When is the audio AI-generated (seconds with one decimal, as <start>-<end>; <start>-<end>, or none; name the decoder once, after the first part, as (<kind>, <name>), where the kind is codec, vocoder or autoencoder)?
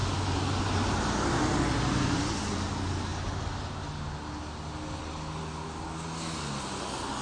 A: none